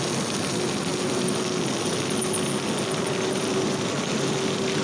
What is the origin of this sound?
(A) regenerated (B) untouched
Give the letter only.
B